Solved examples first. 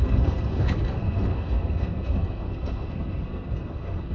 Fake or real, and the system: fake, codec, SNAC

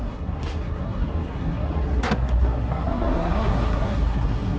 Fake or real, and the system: fake, codec, SNAC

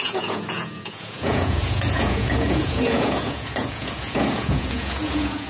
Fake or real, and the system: fake, vocoder, Vocos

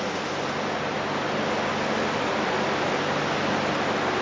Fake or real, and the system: real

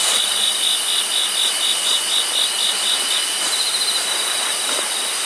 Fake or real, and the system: real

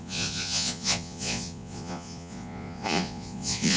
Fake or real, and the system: fake, vocoder, Vocos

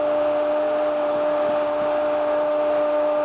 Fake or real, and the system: real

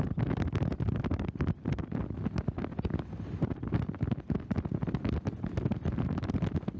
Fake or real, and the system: real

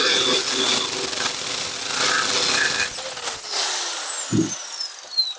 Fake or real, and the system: real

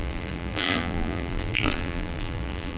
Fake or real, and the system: fake, vocoder, BigVGAN v2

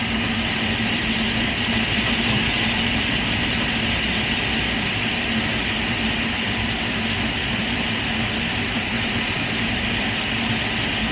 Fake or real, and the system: real